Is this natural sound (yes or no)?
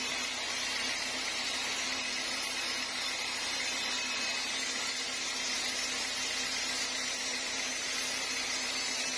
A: yes